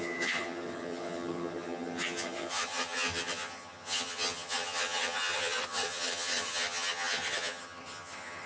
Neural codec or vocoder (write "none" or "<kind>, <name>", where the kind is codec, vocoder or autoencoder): vocoder, HiFi-GAN